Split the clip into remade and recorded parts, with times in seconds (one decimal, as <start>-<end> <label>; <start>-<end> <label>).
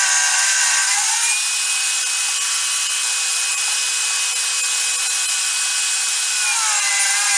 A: 0.0-7.4 recorded